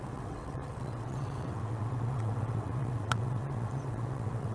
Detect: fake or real fake